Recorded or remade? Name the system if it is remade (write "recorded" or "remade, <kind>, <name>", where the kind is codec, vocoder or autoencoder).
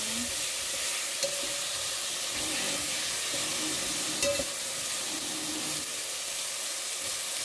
recorded